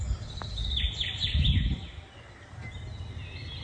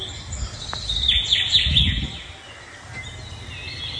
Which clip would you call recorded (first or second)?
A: second